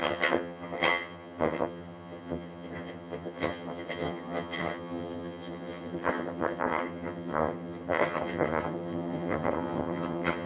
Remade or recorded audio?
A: remade